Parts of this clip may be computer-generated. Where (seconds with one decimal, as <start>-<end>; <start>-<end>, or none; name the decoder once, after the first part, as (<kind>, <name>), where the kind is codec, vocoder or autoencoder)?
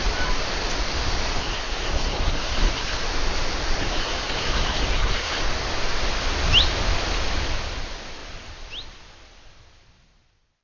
1.4-3.0 (codec, SNAC); 3.8-5.4